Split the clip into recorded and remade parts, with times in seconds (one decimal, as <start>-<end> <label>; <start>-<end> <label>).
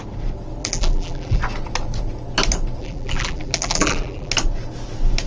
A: 0.0-0.6 recorded; 0.6-1.4 remade; 1.4-2.8 recorded; 2.8-4.3 remade; 4.3-5.3 recorded